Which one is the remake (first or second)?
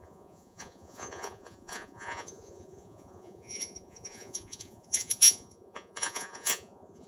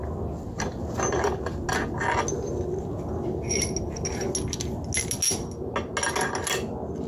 first